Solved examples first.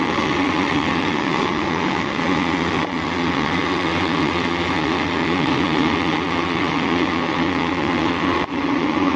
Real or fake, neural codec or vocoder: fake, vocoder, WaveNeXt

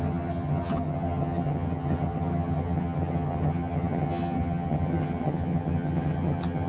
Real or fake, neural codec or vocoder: fake, vocoder, HiFi-GAN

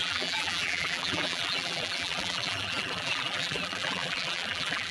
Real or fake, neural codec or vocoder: fake, vocoder, BigVGAN v2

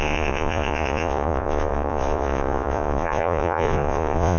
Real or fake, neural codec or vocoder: fake, vocoder, Vocos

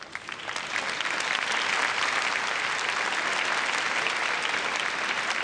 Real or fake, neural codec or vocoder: real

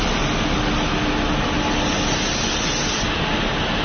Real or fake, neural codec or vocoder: real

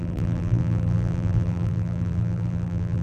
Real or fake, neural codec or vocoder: fake, vocoder, BigVGAN v2